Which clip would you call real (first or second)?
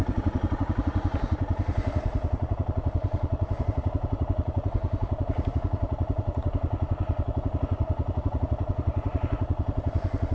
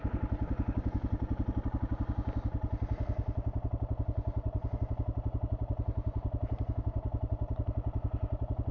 second